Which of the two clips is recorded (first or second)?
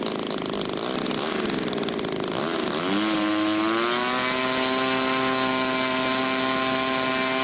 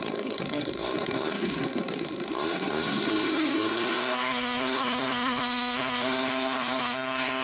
first